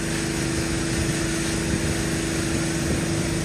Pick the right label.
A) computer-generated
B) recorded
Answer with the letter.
B